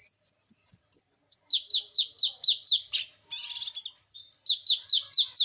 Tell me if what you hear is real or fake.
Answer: real